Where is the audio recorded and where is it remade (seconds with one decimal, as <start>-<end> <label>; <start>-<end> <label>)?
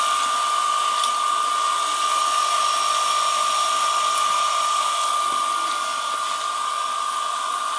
0.0-7.8 recorded